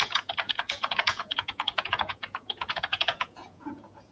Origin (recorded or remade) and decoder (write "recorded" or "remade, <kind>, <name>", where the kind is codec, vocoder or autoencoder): remade, vocoder, Vocos